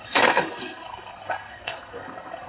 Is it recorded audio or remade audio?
remade